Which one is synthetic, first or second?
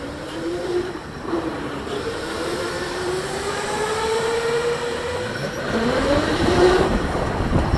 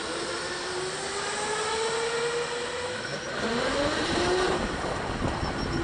first